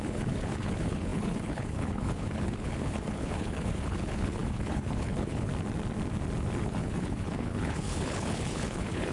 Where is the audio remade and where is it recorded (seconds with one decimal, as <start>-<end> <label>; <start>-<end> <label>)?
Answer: 0.0-5.5 remade; 5.5-6.6 recorded; 6.6-9.1 remade